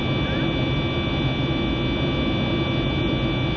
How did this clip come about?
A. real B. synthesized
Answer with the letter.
A